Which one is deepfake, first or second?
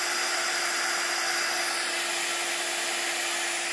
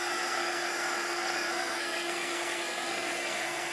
second